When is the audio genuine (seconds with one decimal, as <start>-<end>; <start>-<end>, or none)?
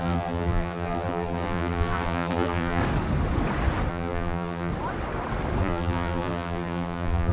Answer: 2.8-3.9; 4.7-5.6